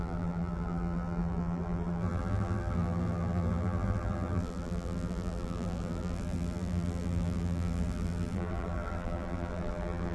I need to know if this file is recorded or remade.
remade